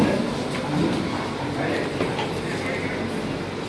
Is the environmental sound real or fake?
real